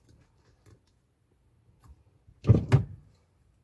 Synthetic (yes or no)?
no